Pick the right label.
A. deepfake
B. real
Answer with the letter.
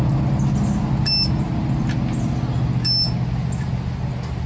B